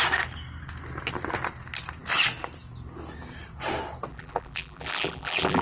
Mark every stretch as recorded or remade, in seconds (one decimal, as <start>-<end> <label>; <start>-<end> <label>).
0.0-4.1 recorded; 4.1-5.6 remade